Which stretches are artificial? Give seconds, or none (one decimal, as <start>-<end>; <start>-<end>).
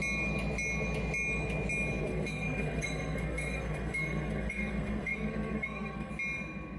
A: 2.0-6.1